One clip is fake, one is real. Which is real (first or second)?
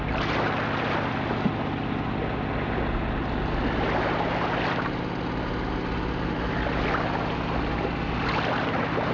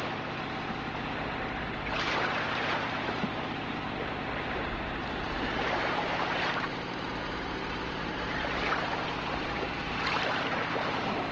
first